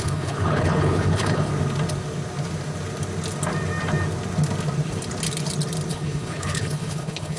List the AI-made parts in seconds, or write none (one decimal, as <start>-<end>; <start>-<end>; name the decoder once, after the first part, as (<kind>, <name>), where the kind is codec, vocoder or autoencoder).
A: 0.0-1.5 (codec, HILCodec); 5.9-7.4